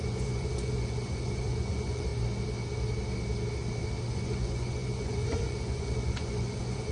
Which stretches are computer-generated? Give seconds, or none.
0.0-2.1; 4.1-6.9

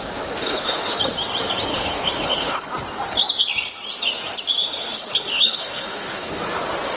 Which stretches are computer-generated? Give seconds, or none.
0.4-1.0; 1.7-2.7; 4.6-6.4

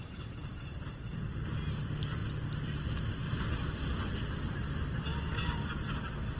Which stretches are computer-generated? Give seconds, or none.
none

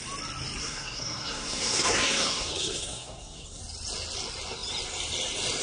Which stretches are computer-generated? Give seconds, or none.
0.6-3.6

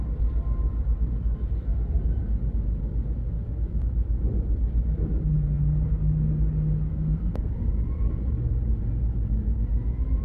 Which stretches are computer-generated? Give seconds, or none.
6.9-7.5

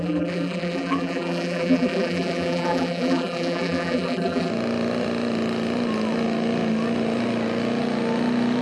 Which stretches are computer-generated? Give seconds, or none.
0.0-4.5

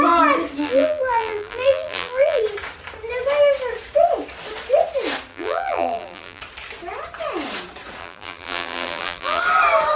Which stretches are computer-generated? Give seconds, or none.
0.6-2.4; 5.3-6.4; 8.0-9.4

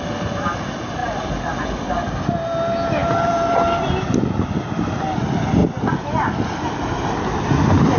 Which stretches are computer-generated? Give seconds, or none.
none